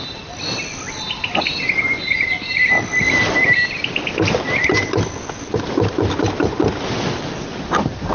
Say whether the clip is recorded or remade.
recorded